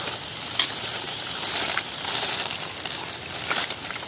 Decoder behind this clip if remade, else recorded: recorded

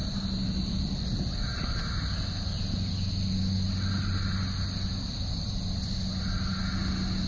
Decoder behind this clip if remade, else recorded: recorded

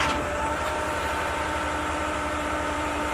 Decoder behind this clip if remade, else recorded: remade, vocoder, BigVGAN v2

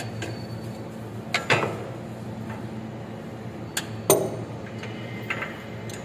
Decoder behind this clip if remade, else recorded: recorded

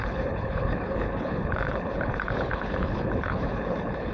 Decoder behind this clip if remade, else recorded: remade, codec, HILCodec